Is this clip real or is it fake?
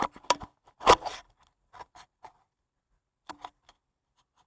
real